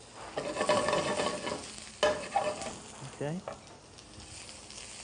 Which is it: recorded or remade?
recorded